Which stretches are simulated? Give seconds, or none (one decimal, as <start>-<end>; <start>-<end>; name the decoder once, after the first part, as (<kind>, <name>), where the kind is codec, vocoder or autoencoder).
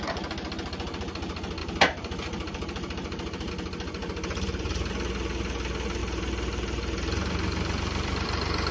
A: 1.6-3.5 (vocoder, BigVGAN v2); 4.0-4.9; 6.0-8.7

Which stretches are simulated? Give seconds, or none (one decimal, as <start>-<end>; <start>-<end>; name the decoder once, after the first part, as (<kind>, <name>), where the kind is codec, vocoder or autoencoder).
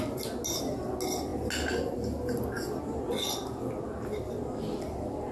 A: none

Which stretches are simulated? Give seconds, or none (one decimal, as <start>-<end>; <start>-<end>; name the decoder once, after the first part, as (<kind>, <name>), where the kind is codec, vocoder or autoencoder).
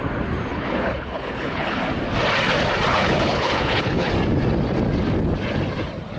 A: 0.5-1.8 (codec, HILCodec); 2.9-4.1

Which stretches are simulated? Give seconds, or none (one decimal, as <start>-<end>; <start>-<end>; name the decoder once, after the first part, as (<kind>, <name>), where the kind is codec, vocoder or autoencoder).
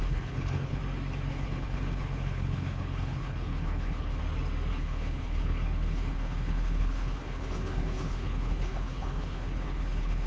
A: 0.0-0.8 (codec, HILCodec); 1.3-4.2; 4.7-10.3